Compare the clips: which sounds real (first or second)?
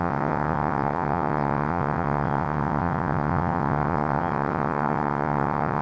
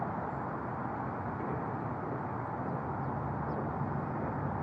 second